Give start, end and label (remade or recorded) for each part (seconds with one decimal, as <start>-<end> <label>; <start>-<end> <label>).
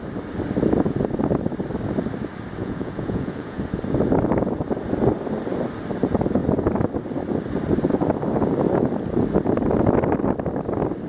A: 0.0-2.6 recorded; 2.6-3.6 remade; 3.6-11.1 recorded